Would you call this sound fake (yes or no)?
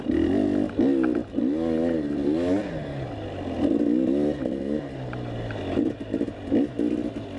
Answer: no